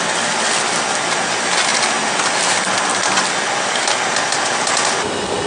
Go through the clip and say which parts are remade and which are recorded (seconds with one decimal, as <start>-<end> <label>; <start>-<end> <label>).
0.0-5.5 recorded

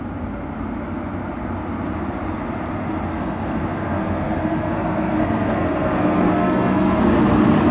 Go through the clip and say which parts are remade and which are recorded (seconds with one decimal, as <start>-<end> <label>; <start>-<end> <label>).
0.0-3.1 recorded; 3.1-7.0 remade; 7.0-7.7 recorded

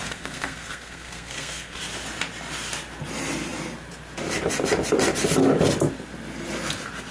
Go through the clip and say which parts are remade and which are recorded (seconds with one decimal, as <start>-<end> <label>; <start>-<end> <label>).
0.0-1.8 remade; 1.8-7.1 recorded

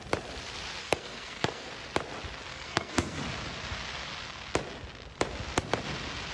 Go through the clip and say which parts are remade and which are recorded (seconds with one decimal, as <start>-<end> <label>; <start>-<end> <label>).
0.0-0.8 recorded; 0.8-1.7 remade; 1.7-2.5 recorded; 2.5-3.2 remade; 3.2-6.3 recorded

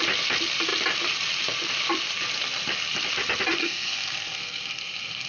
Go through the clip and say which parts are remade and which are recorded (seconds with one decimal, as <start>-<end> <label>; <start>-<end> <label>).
0.0-3.6 recorded; 3.6-5.3 remade

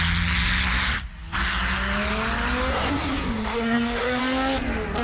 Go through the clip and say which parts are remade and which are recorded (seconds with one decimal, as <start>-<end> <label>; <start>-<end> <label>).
0.0-2.7 recorded; 2.7-4.2 remade; 4.2-5.0 recorded

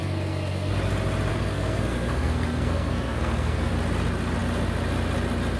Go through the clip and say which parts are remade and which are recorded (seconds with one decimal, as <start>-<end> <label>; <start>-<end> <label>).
0.0-0.7 remade; 0.7-1.3 recorded; 1.3-3.7 remade; 3.7-5.6 recorded